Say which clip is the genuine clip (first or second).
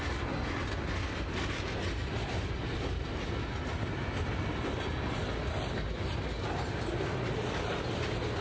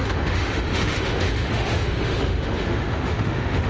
first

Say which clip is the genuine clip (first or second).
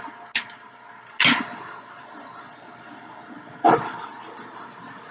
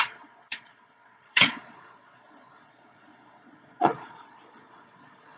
first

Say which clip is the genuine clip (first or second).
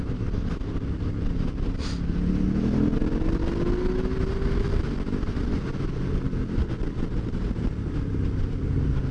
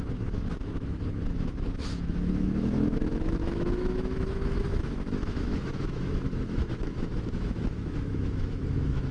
first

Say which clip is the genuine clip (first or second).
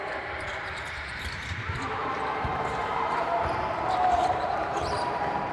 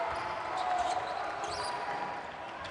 second